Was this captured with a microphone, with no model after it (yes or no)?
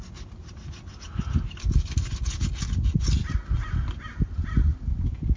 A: yes